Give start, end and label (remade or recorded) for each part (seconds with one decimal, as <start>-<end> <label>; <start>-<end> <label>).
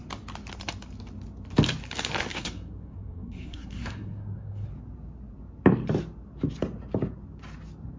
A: 0.0-2.3 recorded; 2.3-4.7 remade; 4.7-8.0 recorded